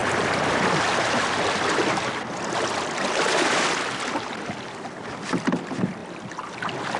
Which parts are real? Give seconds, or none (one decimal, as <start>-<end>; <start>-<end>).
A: 2.1-6.0; 6.6-7.0